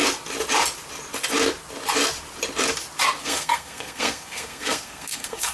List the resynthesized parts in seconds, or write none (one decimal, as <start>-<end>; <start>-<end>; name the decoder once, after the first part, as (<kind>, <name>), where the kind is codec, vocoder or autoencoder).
3.2-5.5 (codec, SNAC)